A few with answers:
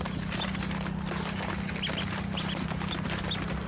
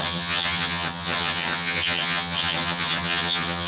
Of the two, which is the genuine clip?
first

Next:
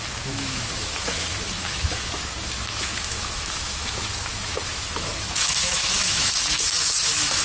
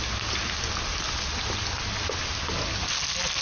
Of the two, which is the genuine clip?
second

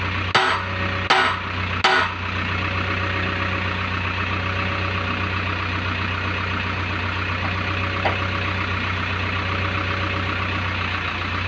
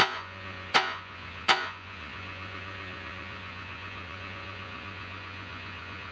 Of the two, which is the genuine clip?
first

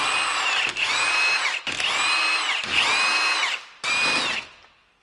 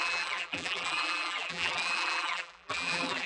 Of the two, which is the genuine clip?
first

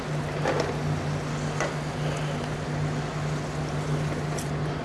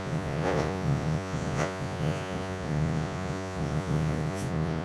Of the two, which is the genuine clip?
first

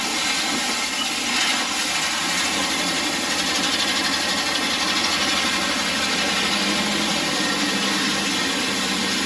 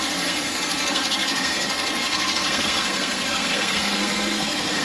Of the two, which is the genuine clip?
first